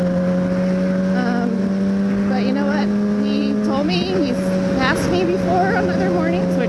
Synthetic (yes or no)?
no